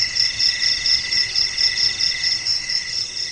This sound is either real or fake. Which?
real